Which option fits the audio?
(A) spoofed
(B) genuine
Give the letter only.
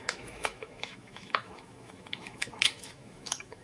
A